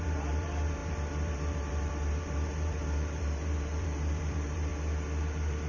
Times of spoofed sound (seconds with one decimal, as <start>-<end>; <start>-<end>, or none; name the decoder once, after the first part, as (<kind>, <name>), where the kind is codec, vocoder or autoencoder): 0.0-4.7 (vocoder, BigVGAN v2); 5.3-5.7